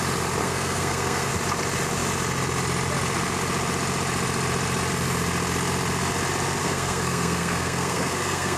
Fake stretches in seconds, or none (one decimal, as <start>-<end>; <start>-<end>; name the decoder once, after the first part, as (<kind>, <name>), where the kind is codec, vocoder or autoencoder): 0.4-1.3 (codec, SNAC); 6.6-8.6